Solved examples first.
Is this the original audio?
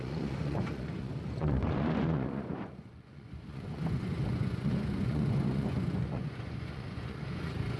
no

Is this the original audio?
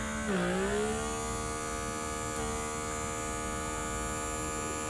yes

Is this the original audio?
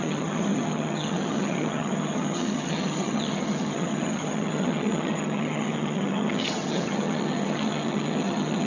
no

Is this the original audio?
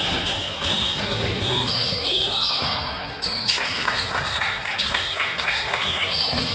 no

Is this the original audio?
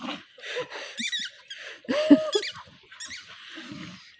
yes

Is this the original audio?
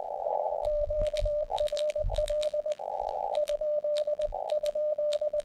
no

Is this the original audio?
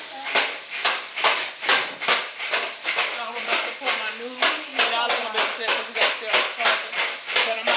yes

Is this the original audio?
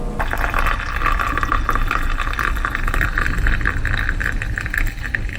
yes